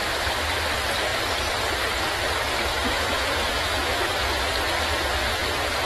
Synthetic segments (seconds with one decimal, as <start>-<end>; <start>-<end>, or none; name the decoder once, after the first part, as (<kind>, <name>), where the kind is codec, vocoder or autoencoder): 2.7-4.1 (autoencoder, DAC-VAE)